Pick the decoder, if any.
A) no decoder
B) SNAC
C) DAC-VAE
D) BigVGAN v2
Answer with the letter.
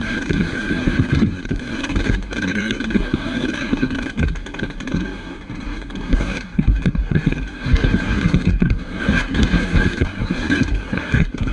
B